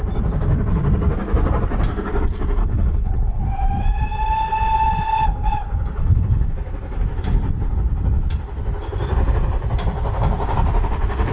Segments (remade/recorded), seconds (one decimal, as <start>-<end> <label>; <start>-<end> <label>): 0.0-2.6 recorded; 2.6-3.4 remade; 3.4-6.0 recorded; 6.0-6.5 remade; 6.5-11.3 recorded